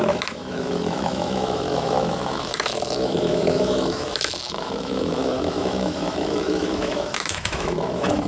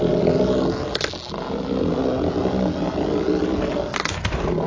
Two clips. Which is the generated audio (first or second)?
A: first